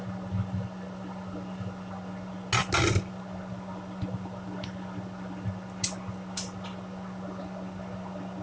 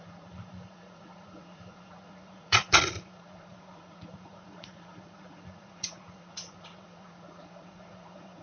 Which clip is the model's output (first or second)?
second